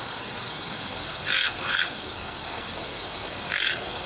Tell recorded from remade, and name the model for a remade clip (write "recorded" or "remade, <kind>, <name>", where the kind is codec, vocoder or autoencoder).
remade, codec, SNAC